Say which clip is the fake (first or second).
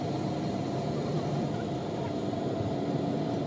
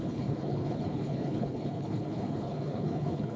second